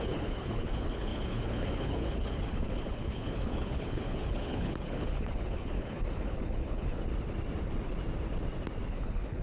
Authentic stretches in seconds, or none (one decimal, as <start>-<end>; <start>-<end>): 7.1-8.9